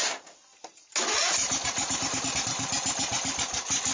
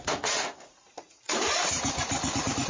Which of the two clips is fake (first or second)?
second